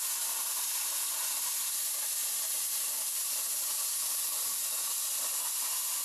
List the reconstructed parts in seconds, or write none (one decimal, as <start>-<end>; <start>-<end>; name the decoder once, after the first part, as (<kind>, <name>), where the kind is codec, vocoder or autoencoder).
none